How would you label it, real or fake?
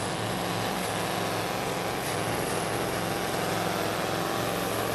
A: real